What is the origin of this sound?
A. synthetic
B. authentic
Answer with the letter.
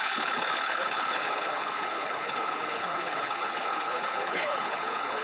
A